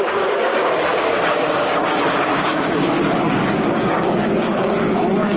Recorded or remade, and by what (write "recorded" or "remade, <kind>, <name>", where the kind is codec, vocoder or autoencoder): remade, codec, DAC